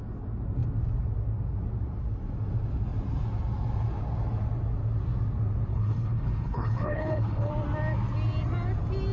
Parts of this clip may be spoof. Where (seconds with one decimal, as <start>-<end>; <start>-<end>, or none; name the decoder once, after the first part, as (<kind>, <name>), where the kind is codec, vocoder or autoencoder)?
5.7-7.5 (codec, HILCodec)